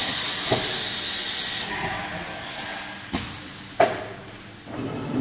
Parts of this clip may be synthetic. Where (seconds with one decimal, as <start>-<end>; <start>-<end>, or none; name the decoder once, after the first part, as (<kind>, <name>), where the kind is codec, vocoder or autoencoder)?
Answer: none